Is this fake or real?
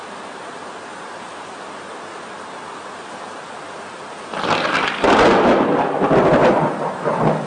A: real